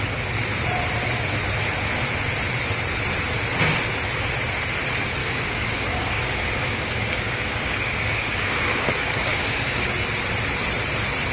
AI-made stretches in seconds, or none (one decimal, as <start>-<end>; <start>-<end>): 5.2-9.9